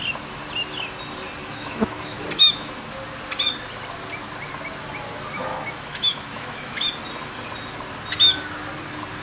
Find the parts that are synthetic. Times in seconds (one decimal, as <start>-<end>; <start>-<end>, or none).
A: 1.4-2.9; 5.5-6.8